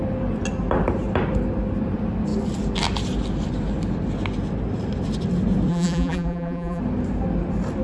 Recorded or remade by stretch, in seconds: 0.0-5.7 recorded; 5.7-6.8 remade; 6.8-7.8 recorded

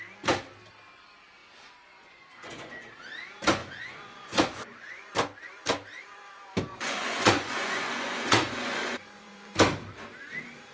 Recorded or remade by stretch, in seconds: 0.0-1.4 recorded; 1.4-2.9 remade; 2.9-3.6 recorded; 3.6-5.1 remade; 5.1-6.7 recorded; 6.7-9.5 remade; 9.5-10.7 recorded